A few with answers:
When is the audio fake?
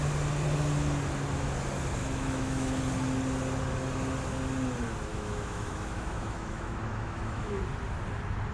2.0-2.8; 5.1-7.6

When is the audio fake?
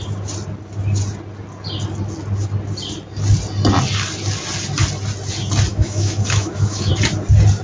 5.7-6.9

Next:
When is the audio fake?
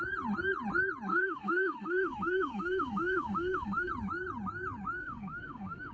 1.1-3.9; 5.0-5.9